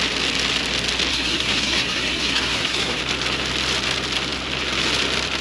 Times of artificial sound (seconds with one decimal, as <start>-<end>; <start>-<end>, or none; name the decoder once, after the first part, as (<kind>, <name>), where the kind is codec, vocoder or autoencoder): 1.1-3.0 (codec, SNAC)